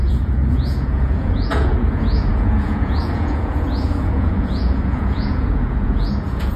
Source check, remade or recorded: remade